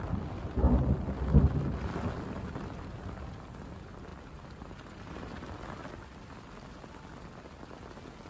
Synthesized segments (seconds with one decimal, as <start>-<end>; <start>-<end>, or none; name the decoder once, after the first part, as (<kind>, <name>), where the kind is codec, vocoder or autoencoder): none